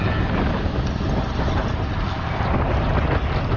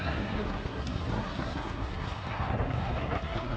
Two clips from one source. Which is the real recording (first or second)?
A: first